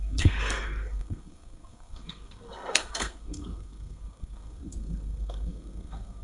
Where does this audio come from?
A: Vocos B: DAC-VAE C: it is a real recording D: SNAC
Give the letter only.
D